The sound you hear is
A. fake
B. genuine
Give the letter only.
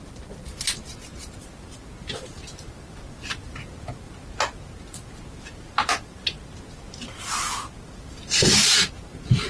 A